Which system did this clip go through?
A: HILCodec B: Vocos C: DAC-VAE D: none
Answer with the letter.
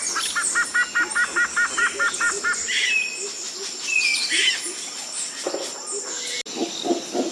D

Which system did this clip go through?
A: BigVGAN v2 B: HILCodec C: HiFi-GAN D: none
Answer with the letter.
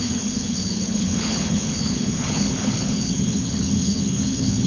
B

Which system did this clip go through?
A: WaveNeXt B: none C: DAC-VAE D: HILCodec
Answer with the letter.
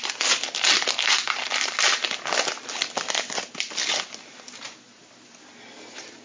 B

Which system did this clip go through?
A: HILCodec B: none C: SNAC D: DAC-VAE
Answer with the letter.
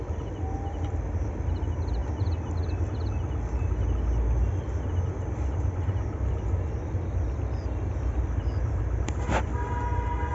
B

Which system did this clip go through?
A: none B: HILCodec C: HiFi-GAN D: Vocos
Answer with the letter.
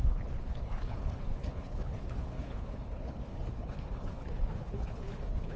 B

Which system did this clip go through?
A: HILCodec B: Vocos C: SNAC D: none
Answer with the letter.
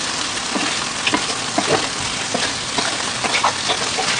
D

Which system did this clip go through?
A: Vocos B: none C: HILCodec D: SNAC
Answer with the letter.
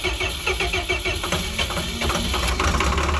B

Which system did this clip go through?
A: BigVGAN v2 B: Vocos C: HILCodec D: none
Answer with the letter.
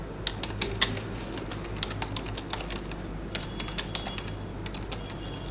D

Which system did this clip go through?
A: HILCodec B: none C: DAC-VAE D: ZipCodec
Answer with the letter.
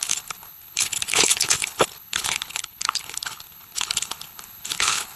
A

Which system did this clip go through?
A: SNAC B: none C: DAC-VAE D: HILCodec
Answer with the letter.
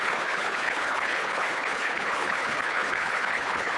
D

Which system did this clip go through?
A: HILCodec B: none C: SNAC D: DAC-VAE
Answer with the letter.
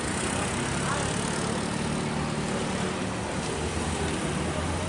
B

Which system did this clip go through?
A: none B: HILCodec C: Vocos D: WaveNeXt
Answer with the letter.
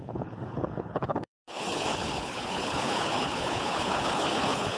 B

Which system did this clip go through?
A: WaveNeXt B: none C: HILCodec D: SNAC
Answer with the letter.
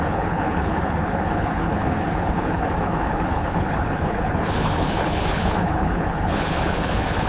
C